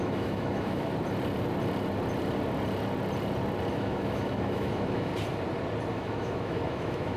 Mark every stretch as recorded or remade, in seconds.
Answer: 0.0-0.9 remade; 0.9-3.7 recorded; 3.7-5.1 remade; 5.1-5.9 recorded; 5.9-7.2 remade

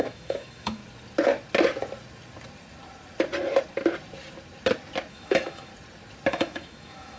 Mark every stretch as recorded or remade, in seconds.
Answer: 0.0-0.8 remade; 0.8-5.1 recorded; 5.1-5.7 remade; 5.7-6.3 recorded; 6.3-7.2 remade